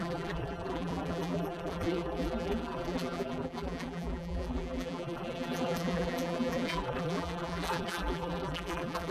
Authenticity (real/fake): fake